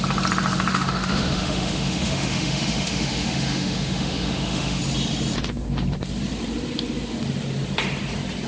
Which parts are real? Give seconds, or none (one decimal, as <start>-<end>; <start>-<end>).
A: 0.0-0.7; 4.8-8.5